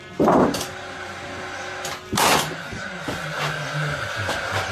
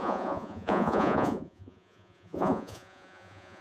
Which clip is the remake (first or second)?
second